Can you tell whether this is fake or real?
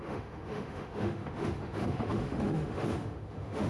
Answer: fake